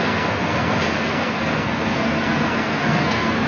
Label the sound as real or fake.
fake